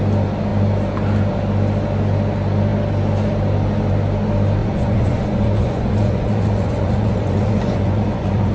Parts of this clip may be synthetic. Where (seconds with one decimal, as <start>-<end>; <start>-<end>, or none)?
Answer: 4.6-8.5